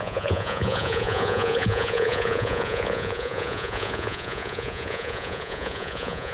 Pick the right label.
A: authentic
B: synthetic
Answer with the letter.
B